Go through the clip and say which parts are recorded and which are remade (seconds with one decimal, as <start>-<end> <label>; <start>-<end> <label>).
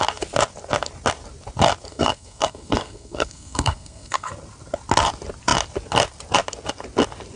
0.0-1.9 recorded; 1.9-4.3 remade; 4.3-7.4 recorded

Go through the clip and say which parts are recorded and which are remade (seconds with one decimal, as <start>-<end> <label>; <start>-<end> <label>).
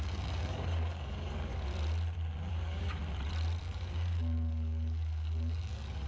0.0-1.5 remade; 1.5-2.5 recorded; 2.5-3.0 remade; 3.0-3.6 recorded; 3.6-6.1 remade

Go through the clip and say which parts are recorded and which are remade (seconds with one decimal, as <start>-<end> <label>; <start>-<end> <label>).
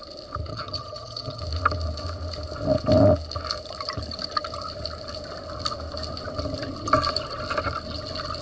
0.0-0.5 recorded; 0.5-1.4 remade; 1.4-8.4 recorded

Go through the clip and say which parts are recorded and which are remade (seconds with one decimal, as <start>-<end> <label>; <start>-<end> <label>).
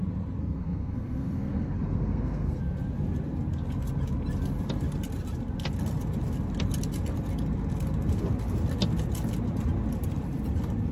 0.0-0.4 recorded; 0.4-2.6 remade; 2.6-10.9 recorded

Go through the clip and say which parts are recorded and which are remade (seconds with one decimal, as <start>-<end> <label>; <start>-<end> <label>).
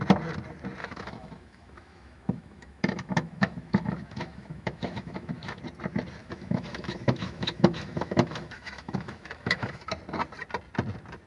0.0-0.8 recorded; 0.8-5.6 remade; 5.6-6.2 recorded; 6.2-9.8 remade; 9.8-11.3 recorded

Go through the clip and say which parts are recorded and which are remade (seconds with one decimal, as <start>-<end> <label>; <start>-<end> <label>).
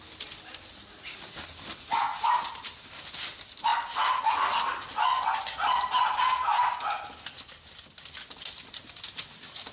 0.0-2.1 recorded; 2.1-2.8 remade; 2.8-9.7 recorded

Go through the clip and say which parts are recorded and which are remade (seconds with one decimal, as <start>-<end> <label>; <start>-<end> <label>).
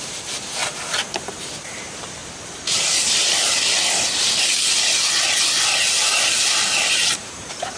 0.0-0.6 remade; 0.6-1.2 recorded; 1.2-2.2 remade; 2.2-6.9 recorded; 6.9-7.8 remade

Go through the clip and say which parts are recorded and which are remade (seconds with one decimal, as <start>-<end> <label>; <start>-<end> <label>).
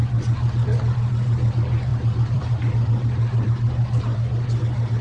0.0-1.9 recorded; 1.9-5.0 remade